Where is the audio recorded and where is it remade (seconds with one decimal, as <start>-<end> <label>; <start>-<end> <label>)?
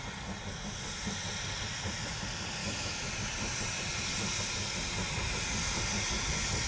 0.0-2.6 recorded; 2.6-3.1 remade; 3.1-6.7 recorded